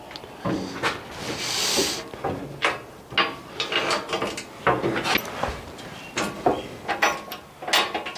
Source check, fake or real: real